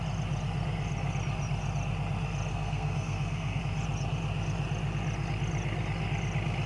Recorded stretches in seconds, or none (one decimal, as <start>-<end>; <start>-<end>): 0.0-2.5; 3.6-6.7